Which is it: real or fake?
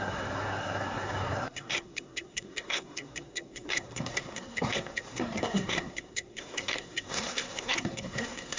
fake